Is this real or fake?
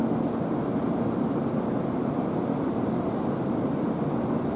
real